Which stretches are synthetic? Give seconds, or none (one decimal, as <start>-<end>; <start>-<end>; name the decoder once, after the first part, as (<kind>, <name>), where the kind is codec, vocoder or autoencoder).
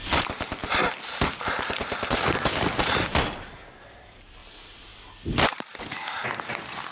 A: none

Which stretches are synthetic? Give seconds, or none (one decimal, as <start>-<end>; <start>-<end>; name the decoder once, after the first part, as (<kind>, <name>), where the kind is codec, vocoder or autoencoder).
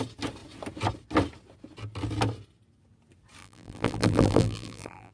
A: 3.4-5.1 (vocoder, BigVGAN v2)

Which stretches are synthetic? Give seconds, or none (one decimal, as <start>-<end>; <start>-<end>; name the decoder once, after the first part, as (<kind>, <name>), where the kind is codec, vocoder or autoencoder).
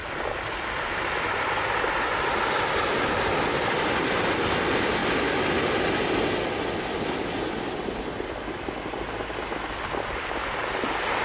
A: none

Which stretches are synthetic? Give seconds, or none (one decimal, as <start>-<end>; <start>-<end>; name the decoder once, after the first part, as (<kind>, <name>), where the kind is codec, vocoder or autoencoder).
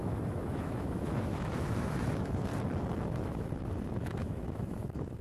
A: 0.0-2.5 (autoencoder, DAC-VAE); 3.0-5.2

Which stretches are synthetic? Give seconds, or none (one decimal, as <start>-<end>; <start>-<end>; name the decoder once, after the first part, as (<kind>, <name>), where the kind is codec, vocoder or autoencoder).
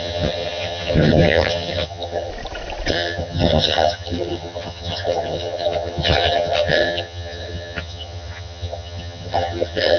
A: 0.0-2.3 (vocoder, HiFi-GAN); 2.9-10.0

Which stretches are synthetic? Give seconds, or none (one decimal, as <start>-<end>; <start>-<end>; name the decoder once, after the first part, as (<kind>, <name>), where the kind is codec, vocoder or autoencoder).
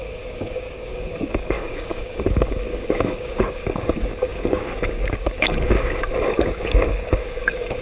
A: 0.0-7.8 (codec, DAC)